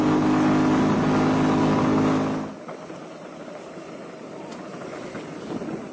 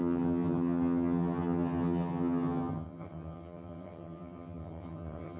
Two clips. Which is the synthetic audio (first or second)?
second